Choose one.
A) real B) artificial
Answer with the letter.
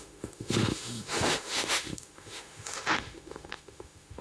B